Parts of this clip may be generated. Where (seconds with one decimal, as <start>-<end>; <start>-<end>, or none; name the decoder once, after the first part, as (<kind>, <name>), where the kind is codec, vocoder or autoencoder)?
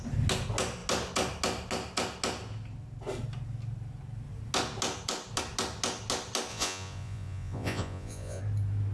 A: 6.5-8.4 (vocoder, Vocos)